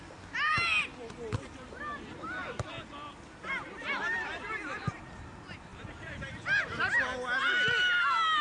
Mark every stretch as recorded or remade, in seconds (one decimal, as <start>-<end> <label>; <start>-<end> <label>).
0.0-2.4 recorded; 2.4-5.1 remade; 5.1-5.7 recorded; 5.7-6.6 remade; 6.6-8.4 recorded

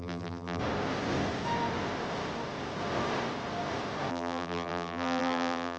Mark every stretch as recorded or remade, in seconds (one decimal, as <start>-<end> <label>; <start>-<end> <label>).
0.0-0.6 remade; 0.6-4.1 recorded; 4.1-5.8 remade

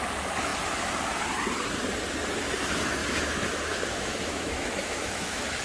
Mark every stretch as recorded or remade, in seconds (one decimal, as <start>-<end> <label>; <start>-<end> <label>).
0.0-3.0 recorded; 3.0-5.6 remade

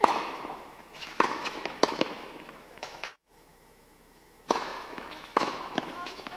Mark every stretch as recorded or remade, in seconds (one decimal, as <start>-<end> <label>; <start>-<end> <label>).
0.0-6.4 remade